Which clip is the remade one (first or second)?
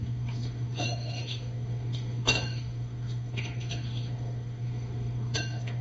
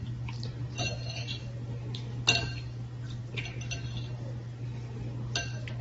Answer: first